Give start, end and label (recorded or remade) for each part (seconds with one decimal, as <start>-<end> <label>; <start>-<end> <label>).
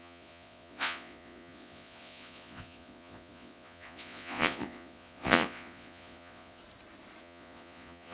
0.0-6.6 remade; 6.6-7.2 recorded; 7.2-8.1 remade